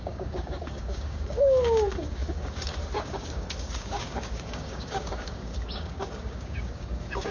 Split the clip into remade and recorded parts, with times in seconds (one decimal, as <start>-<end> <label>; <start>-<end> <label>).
0.0-7.3 remade